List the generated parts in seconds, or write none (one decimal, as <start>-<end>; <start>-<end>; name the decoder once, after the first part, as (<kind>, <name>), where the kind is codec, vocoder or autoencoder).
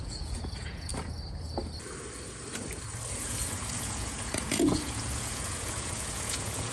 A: 0.0-0.9 (vocoder, Vocos); 3.1-6.7